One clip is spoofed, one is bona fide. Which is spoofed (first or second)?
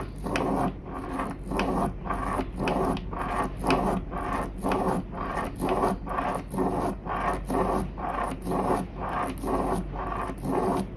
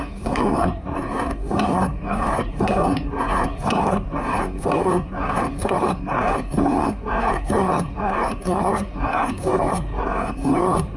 second